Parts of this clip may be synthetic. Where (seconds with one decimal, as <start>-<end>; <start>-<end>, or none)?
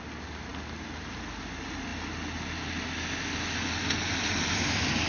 none